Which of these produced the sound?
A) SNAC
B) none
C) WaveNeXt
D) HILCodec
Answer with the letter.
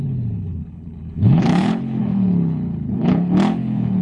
D